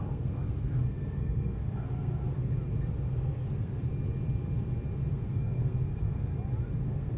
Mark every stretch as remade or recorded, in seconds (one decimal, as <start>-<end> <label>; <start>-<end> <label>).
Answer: 0.0-2.5 remade; 2.5-3.0 recorded; 3.0-3.9 remade; 3.9-5.1 recorded; 5.1-6.3 remade; 6.3-6.8 recorded; 6.8-7.2 remade